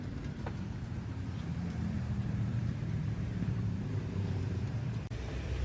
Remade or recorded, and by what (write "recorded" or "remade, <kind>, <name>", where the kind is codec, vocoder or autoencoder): remade, vocoder, BigVGAN v2